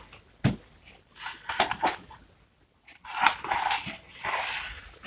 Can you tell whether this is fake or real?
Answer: real